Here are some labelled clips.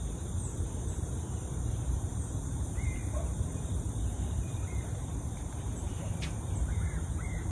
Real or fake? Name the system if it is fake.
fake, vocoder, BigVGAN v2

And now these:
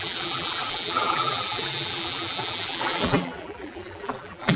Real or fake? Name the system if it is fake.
fake, vocoder, BigVGAN v2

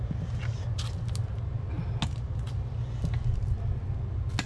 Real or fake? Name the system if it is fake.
real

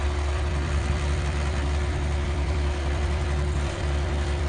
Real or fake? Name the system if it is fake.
fake, vocoder, BigVGAN v2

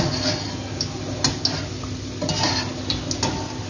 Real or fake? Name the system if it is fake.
real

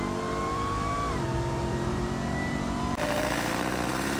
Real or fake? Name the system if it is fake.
fake, vocoder, BigVGAN v2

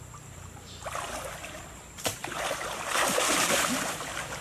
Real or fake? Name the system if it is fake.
fake, vocoder, BigVGAN v2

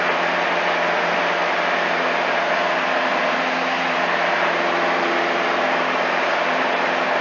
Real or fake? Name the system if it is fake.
fake, vocoder, BigVGAN v2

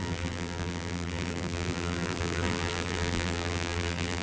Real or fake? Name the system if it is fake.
fake, vocoder, BigVGAN v2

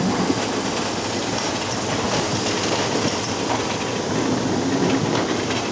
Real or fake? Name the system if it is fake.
real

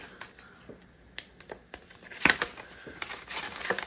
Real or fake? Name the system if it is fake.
real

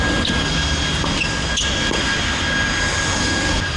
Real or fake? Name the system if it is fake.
real